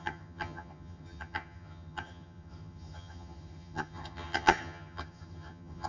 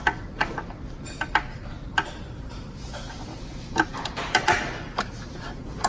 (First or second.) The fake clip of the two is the first